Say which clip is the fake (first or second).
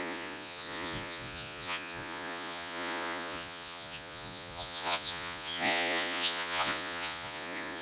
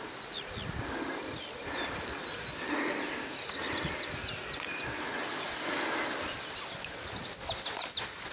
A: first